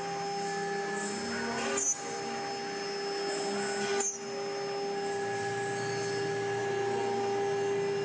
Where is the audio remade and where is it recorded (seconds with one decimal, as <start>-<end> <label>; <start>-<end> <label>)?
0.0-8.0 recorded